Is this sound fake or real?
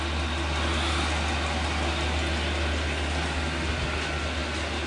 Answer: real